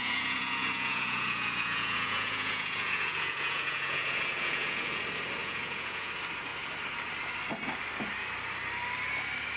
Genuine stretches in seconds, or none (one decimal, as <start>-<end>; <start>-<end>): 5.0-5.4; 6.1-9.6